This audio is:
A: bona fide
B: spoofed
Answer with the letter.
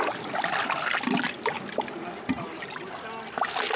A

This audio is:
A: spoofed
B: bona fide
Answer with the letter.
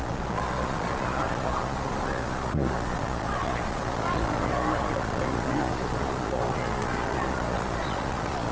A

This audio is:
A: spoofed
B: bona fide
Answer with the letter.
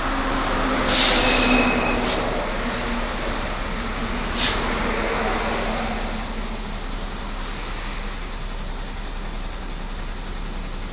B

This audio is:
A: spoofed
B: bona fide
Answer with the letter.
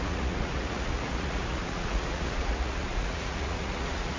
A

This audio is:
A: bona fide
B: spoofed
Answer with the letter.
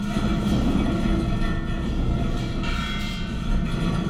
A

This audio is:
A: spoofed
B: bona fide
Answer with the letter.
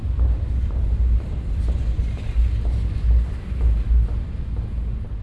B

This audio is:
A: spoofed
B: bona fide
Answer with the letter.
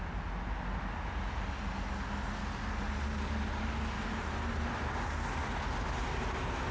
B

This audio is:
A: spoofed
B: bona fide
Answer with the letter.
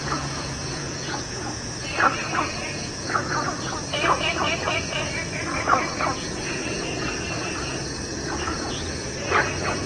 A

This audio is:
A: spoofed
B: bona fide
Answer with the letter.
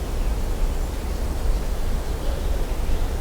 B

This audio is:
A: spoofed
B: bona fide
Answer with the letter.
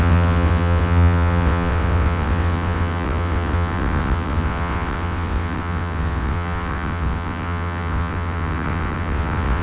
A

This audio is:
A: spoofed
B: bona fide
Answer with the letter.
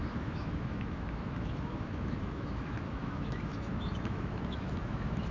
A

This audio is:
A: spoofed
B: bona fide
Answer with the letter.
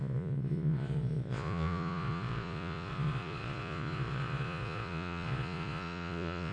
A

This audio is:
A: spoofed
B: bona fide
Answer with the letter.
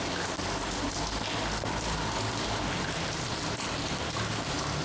A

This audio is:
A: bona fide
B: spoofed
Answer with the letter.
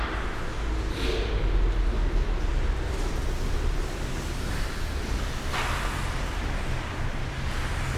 A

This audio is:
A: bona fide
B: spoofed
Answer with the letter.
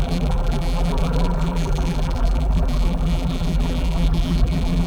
B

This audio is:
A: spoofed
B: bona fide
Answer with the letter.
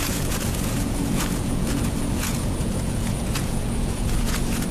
A